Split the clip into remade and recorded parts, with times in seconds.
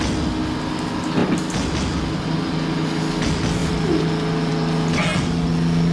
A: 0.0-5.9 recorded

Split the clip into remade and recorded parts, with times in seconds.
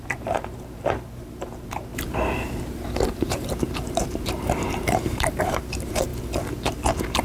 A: 0.0-1.9 remade; 1.9-2.7 recorded; 2.7-6.1 remade; 6.1-7.2 recorded